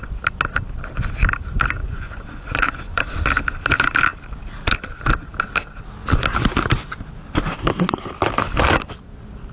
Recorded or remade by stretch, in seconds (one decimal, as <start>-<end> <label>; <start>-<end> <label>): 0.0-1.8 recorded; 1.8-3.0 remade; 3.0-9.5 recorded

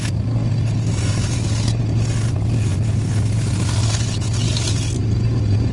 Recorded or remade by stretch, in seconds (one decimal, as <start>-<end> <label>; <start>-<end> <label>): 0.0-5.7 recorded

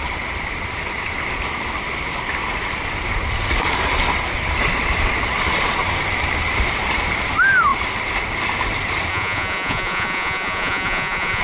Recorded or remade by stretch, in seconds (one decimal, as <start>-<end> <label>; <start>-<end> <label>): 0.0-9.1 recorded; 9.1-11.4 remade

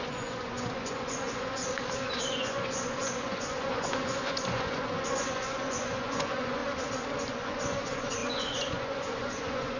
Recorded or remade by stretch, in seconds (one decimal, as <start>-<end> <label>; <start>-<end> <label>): 0.0-1.6 remade; 1.6-2.2 recorded; 2.2-6.6 remade; 6.6-7.3 recorded; 7.3-9.8 remade

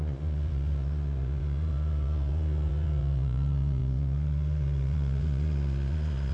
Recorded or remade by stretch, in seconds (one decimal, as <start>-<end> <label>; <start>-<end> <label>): 0.0-6.3 remade

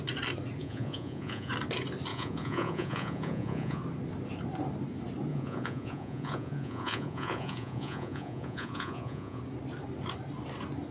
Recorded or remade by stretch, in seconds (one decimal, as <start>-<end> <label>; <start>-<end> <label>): 0.0-0.6 recorded; 0.6-1.5 remade; 1.5-2.1 recorded; 2.1-3.8 remade; 3.8-5.3 recorded; 5.3-9.4 remade; 9.4-10.9 recorded